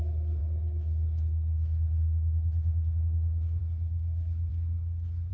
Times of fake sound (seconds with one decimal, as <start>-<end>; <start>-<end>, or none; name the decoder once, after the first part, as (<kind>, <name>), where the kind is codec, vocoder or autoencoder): 0.4-3.6 (codec, HILCodec)